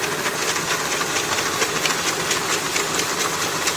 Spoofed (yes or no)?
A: no